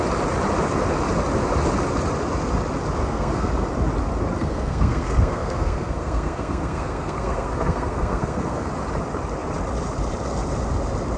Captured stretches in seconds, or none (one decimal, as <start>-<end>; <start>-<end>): 0.0-3.0; 3.5-4.4; 8.7-11.2